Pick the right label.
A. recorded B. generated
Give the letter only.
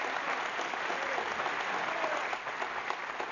A